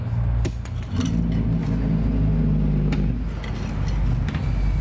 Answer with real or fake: real